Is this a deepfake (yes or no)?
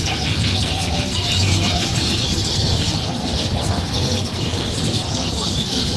yes